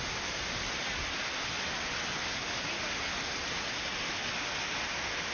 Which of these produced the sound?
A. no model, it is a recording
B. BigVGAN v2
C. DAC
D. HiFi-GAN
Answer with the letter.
A